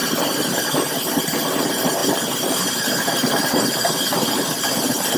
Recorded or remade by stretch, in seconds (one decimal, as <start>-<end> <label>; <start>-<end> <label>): 0.0-1.2 remade; 1.2-2.0 recorded; 2.0-4.6 remade; 4.6-5.2 recorded